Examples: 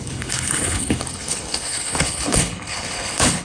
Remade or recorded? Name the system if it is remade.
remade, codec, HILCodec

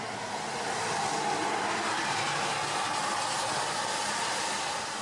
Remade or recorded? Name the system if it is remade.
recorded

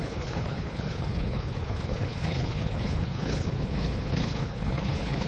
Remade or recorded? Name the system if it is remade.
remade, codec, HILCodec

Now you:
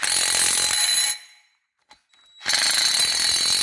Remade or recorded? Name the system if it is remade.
recorded